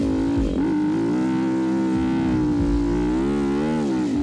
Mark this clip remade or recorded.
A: recorded